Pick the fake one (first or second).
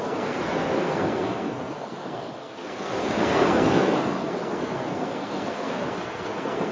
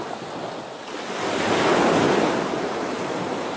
first